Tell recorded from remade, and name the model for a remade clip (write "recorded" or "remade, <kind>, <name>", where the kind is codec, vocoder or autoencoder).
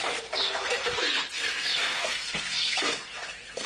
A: remade, codec, SNAC